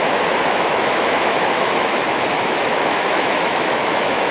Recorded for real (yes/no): no